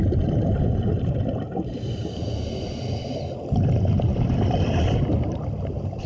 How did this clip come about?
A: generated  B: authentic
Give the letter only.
B